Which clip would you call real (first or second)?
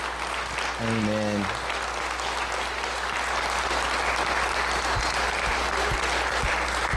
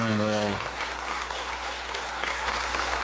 first